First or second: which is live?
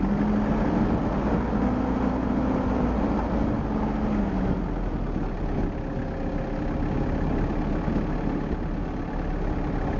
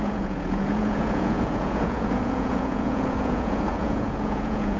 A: first